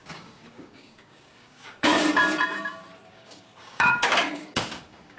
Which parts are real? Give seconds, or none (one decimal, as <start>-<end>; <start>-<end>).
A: 1.9-3.1